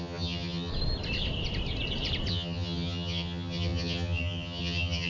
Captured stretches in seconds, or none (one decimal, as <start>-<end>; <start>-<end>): 0.7-2.3